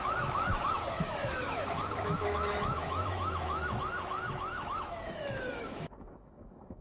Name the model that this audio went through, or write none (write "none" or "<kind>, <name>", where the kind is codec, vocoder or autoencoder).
autoencoder, DAC-VAE